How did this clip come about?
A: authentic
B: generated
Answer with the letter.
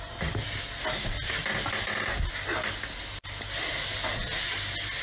A